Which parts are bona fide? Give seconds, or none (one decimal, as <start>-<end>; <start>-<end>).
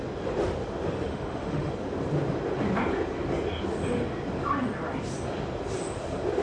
0.0-1.1; 1.7-6.4